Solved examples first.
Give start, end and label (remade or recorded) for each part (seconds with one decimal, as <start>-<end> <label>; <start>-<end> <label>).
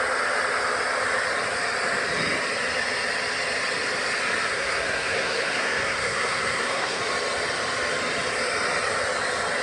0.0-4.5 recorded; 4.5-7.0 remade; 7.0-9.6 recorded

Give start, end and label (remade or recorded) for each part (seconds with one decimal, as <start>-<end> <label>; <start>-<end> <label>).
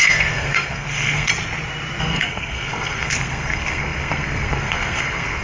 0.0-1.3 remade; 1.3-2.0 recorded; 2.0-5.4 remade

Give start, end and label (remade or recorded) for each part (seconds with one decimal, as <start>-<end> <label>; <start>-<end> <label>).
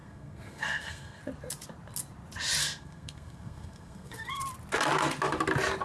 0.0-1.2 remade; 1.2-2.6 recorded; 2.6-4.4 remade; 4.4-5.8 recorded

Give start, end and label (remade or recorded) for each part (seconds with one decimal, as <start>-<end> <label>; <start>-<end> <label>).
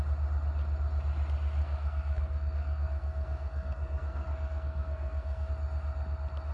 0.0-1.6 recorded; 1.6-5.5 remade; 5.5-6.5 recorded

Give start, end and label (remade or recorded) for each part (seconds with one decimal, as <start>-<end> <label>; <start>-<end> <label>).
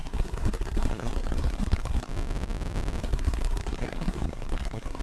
0.0-2.1 remade; 2.1-3.0 recorded; 3.0-5.0 remade